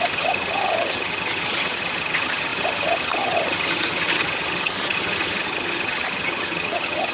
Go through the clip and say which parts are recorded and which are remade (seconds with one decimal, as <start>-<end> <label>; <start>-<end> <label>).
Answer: 0.0-7.1 remade